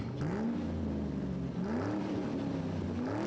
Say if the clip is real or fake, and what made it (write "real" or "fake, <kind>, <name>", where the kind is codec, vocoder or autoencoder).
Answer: real